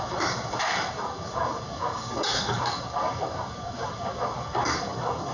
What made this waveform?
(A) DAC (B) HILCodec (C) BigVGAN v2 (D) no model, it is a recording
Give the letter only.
A